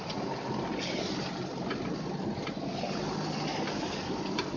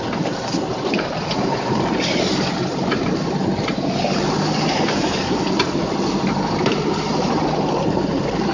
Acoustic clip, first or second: first